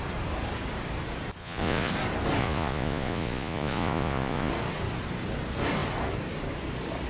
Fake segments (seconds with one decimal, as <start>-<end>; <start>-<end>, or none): 1.4-1.9; 2.4-4.5

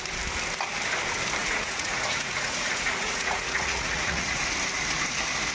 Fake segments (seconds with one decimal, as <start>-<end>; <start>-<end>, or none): 1.4-4.4

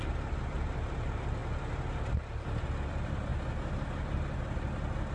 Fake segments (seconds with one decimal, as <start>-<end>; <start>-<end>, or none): none